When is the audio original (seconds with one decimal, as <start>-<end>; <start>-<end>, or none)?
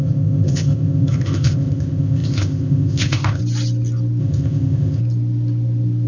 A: 3.4-4.2; 5.0-6.1